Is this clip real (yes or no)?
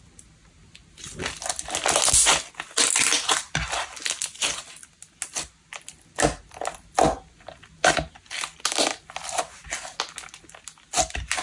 yes